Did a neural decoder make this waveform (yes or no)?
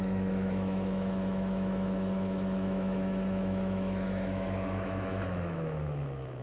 yes